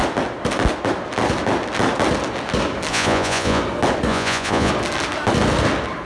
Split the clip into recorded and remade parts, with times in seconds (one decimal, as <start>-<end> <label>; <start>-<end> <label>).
0.0-2.9 recorded; 2.9-3.6 remade; 3.6-4.1 recorded; 4.1-4.7 remade; 4.7-6.0 recorded